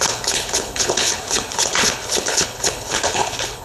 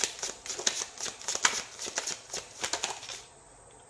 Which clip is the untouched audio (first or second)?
second